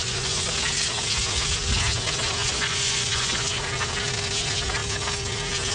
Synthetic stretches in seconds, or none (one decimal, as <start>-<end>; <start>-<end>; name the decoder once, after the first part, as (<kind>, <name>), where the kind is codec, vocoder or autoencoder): 0.0-0.5 (vocoder, Vocos); 2.4-3.6